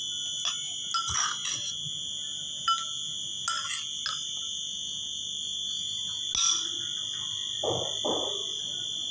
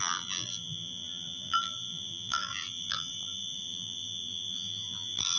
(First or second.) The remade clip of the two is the second